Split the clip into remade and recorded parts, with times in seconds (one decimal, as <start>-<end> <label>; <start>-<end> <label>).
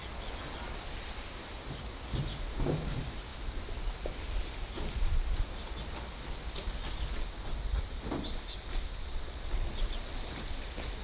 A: 0.0-11.0 recorded